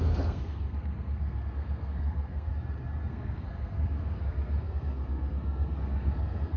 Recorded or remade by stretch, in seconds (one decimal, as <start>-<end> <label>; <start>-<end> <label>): 0.0-2.5 remade; 2.5-3.1 recorded; 3.1-6.6 remade